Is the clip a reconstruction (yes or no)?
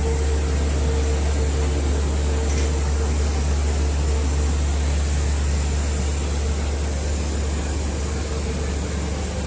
no